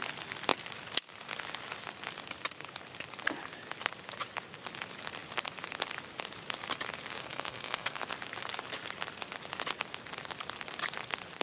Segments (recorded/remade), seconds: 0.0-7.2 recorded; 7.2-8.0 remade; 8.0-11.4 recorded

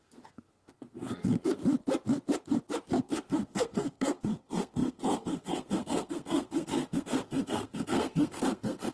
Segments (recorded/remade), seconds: 0.0-1.6 remade; 1.6-3.0 recorded; 3.0-8.9 remade